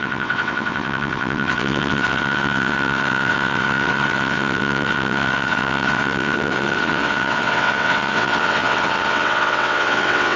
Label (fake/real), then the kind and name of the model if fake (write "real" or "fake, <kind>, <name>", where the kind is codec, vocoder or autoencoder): fake, vocoder, WaveNeXt